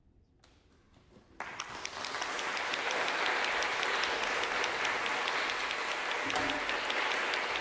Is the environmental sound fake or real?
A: real